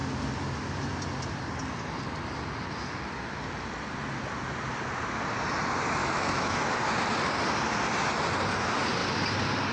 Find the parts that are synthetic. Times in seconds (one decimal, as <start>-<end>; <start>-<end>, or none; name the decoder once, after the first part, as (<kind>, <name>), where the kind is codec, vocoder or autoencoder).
6.0-6.6 (autoencoder, DAC-VAE)